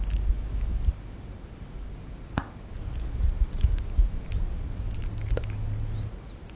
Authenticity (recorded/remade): recorded